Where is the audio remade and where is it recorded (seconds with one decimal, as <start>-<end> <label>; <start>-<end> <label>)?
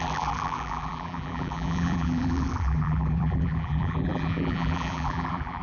0.0-5.6 remade